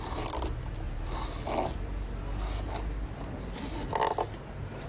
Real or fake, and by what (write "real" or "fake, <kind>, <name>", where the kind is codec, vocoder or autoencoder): real